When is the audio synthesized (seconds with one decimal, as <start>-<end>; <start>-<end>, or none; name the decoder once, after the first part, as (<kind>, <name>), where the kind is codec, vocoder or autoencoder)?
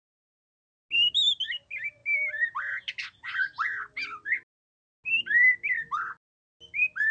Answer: none